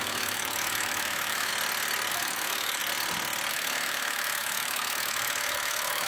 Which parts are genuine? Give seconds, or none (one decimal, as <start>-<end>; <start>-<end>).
1.5-2.1; 2.8-3.5